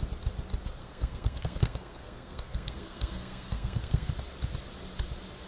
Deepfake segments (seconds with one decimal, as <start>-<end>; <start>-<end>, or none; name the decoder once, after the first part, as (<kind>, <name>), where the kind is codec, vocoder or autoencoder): 0.8-4.1 (codec, SNAC)